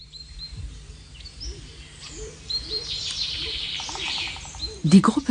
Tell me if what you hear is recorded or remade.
remade